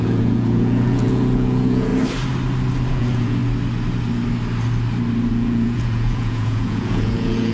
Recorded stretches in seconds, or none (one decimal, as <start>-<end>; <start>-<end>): 1.9-2.9; 3.4-5.3